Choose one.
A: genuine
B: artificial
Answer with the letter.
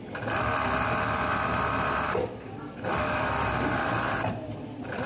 A